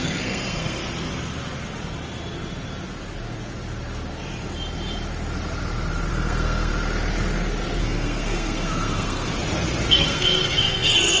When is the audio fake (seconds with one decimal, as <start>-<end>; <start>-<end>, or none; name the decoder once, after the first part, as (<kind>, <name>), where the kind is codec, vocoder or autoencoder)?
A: 0.0-0.8 (codec, SNAC); 6.1-6.7; 7.8-9.3; 9.9-11.2